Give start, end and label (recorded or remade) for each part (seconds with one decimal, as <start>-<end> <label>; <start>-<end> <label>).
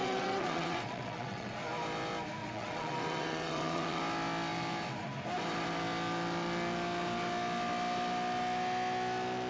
0.0-1.5 remade; 1.5-2.4 recorded; 2.4-4.0 remade; 4.0-9.5 recorded